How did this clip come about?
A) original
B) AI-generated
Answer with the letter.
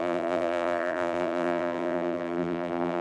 B